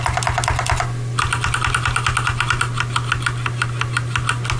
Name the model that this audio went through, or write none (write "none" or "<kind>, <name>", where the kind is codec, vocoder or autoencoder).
none